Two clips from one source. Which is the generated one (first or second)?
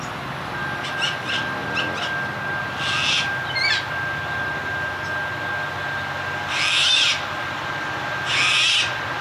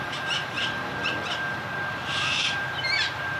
second